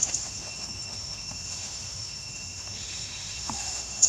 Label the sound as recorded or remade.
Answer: remade